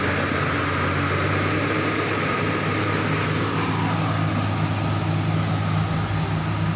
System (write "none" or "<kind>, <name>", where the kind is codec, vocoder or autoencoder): none